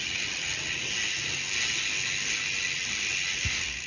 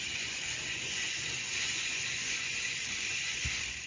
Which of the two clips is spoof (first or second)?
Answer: second